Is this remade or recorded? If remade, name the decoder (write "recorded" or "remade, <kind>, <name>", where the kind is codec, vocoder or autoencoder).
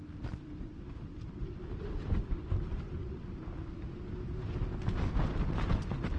recorded